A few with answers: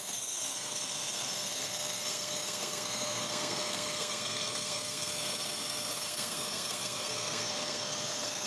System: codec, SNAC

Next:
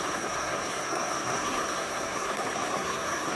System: codec, SNAC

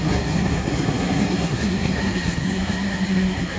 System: codec, SNAC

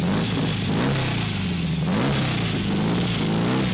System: none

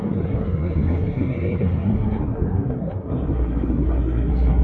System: codec, SNAC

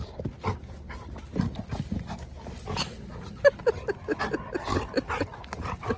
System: none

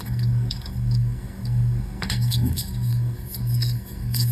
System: codec, SNAC